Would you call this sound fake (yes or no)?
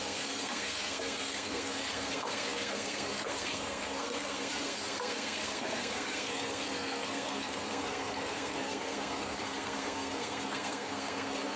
yes